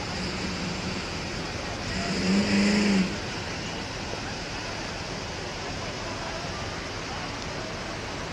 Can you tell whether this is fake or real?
real